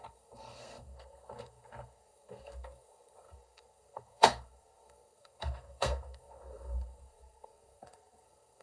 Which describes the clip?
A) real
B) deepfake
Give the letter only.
B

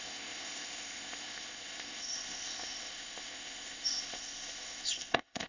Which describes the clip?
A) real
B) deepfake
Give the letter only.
B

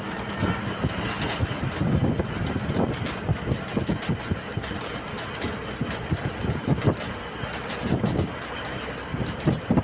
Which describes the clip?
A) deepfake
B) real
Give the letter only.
B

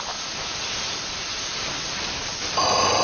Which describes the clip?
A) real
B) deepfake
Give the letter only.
A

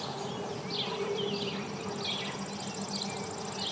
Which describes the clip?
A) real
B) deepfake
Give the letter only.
A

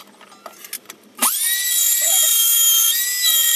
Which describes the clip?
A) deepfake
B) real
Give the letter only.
B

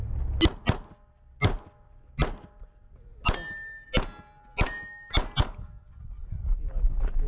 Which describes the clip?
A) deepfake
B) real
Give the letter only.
B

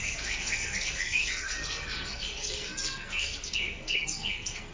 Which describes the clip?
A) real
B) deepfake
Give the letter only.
B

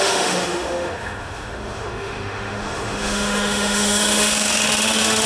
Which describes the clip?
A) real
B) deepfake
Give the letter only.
B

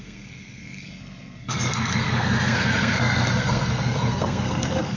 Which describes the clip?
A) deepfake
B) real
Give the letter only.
A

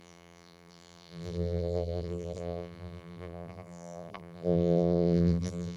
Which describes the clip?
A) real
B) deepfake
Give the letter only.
B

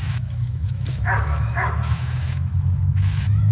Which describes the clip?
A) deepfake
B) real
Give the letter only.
A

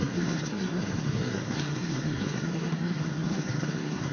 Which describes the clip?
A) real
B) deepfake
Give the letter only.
B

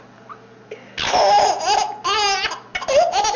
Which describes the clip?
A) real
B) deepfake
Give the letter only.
A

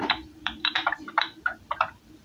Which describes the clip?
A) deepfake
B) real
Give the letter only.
A